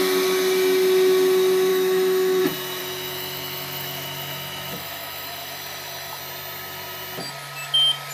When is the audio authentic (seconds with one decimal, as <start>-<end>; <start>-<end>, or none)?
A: 0.0-1.7; 2.4-2.8; 6.2-8.1